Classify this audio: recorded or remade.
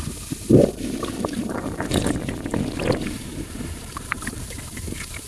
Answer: remade